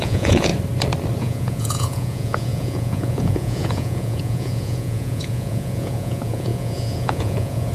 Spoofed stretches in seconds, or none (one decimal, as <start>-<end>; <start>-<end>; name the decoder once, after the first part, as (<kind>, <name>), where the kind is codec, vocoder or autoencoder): 0.0-0.5 (vocoder, Vocos); 1.2-7.7